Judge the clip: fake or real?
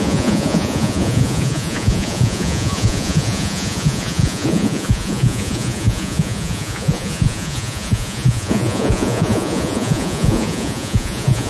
fake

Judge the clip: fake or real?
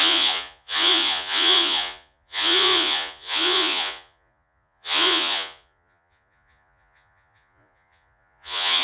fake